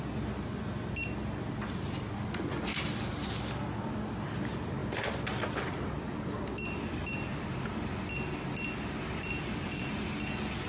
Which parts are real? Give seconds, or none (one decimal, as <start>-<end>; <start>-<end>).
0.0-10.7